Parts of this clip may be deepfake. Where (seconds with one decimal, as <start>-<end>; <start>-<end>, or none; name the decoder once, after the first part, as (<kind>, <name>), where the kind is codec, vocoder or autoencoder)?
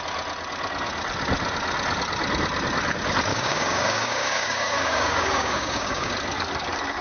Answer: 3.3-6.1 (codec, DAC)